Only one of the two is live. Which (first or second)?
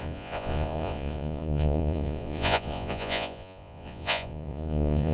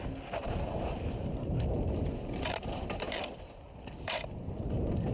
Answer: second